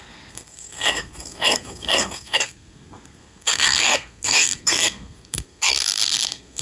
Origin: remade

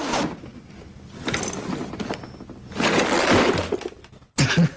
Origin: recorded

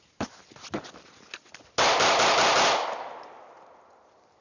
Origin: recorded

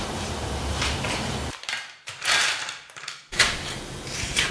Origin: remade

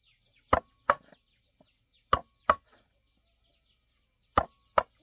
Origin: recorded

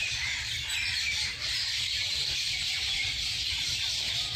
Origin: remade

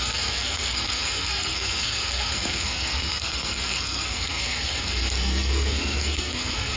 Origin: remade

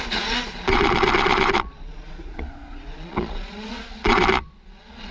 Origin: remade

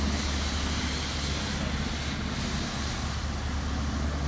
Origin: recorded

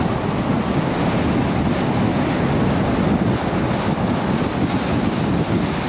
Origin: recorded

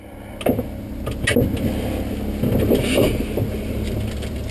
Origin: recorded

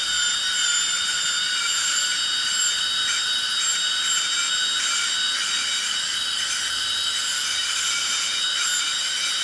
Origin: recorded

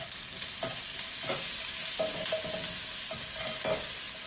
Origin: recorded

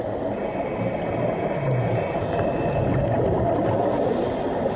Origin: recorded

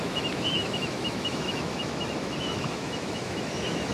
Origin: remade